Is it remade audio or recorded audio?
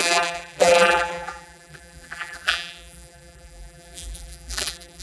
remade